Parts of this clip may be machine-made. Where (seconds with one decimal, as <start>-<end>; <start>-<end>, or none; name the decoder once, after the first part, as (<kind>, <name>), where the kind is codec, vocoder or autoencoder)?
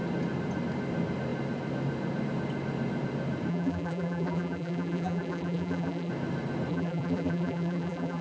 3.5-6.1 (vocoder, BigVGAN v2); 6.7-8.2